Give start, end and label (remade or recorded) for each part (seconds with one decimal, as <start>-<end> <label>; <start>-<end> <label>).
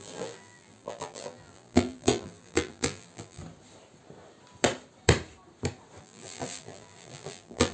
0.0-3.4 remade; 3.4-6.0 recorded; 6.0-7.7 remade